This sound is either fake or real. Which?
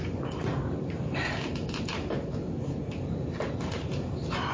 fake